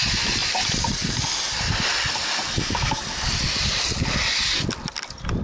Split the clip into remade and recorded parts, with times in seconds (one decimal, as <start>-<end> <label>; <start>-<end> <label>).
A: 0.0-5.4 recorded